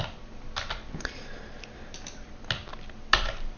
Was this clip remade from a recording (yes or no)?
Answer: no